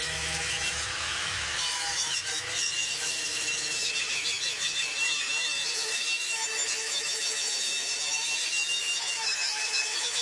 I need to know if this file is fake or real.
fake